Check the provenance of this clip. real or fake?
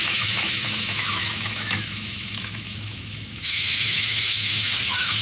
fake